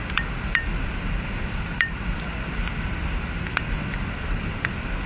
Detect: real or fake real